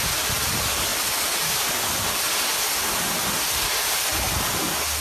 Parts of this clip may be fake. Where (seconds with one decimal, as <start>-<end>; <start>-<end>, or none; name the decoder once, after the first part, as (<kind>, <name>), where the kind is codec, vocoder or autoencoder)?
0.9-2.2 (vocoder, BigVGAN v2)